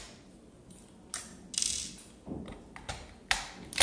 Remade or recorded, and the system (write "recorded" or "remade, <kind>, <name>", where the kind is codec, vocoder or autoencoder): recorded